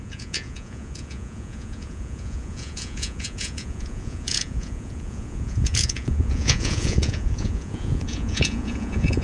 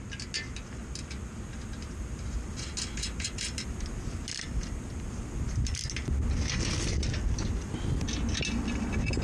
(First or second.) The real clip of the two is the second